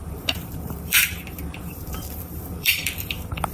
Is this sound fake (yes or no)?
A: yes